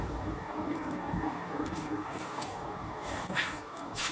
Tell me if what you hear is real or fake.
fake